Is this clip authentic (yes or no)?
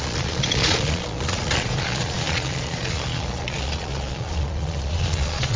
no